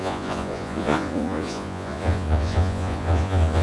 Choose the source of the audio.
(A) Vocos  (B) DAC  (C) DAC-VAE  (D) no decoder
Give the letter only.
A